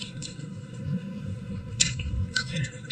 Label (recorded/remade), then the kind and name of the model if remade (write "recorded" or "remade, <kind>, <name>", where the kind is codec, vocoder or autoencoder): remade, codec, SNAC